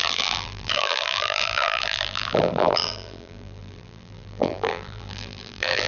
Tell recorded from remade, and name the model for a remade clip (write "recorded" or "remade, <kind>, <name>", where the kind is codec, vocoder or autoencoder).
remade, vocoder, BigVGAN v2